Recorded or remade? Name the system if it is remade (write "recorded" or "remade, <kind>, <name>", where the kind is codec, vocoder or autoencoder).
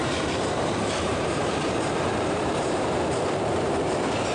remade, vocoder, BigVGAN v2